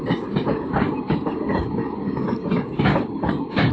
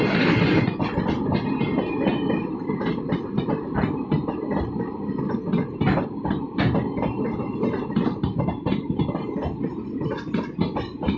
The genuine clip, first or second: second